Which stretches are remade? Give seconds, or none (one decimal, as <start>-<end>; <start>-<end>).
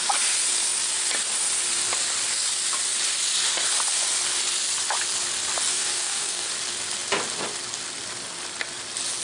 5.7-6.5